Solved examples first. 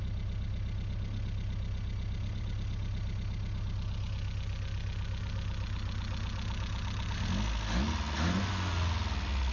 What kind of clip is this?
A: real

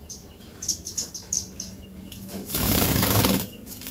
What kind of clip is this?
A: fake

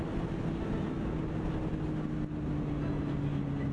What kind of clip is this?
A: real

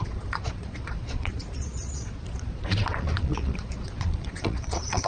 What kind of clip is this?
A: fake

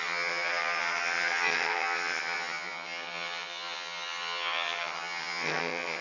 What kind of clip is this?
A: fake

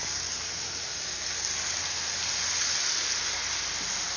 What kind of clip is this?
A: real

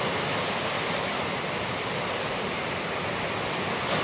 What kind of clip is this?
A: real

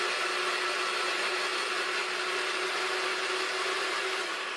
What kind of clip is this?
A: real